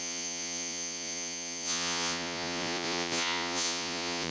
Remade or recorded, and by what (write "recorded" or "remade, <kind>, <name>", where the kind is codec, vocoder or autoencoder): remade, vocoder, Vocos